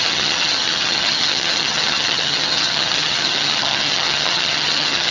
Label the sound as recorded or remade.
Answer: remade